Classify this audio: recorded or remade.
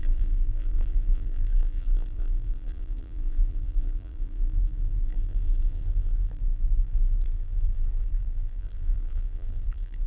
remade